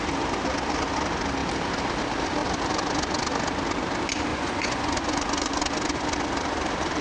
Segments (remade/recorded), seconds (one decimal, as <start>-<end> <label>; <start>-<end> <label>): 0.0-4.3 recorded; 4.3-5.6 remade; 5.6-7.0 recorded